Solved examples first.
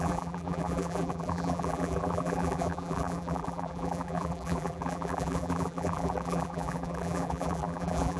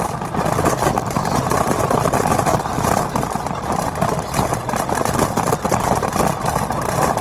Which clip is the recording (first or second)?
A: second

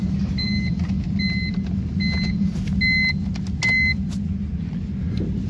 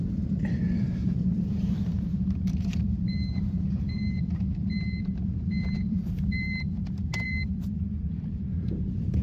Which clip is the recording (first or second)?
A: first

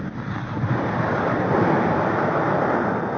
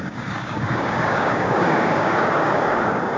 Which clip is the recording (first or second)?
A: first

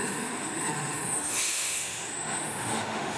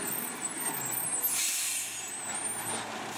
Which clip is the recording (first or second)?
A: second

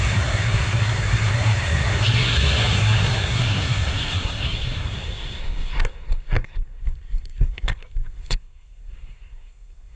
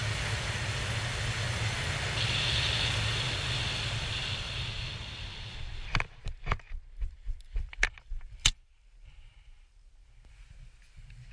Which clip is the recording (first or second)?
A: second